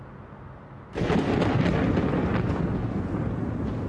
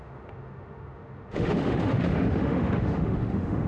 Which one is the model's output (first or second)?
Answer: second